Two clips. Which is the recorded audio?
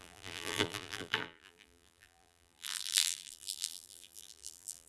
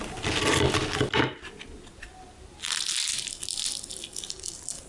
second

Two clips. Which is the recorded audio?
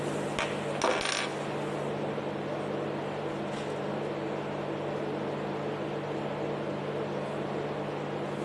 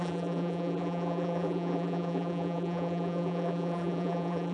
first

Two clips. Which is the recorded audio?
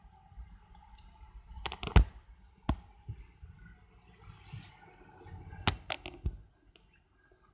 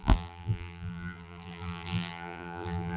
first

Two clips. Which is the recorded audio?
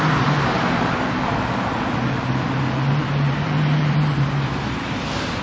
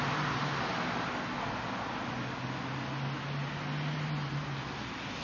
second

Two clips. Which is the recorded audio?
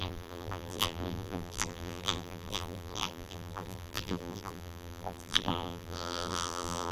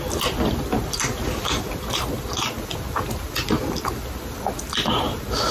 second